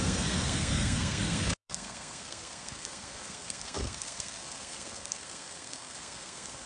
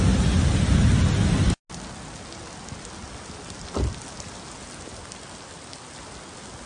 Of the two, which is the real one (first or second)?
second